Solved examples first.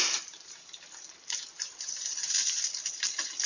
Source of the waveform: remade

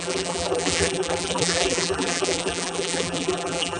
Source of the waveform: remade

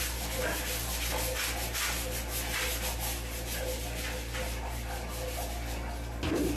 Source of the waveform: recorded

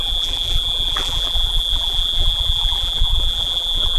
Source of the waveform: remade